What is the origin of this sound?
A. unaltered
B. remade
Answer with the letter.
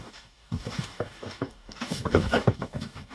B